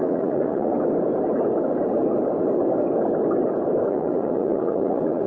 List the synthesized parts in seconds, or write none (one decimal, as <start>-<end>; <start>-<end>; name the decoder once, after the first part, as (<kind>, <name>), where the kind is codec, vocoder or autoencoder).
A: 0.0-0.7 (vocoder, Vocos); 3.9-5.3